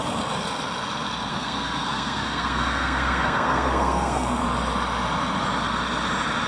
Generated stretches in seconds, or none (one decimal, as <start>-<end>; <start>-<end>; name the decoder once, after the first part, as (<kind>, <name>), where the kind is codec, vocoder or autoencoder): 1.3-4.4 (codec, SNAC)